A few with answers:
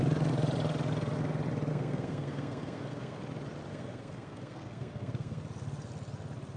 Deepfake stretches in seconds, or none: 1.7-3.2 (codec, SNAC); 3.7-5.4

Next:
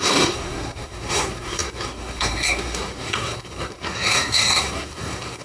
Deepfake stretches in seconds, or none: 0.0-5.4 (codec, SNAC)

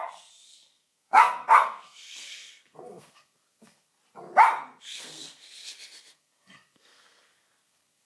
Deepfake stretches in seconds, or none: 0.0-4.0 (codec, SNAC); 4.8-8.1